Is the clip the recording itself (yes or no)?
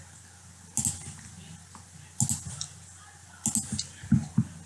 yes